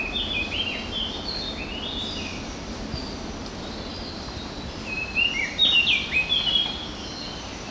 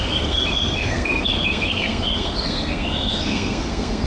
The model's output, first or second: second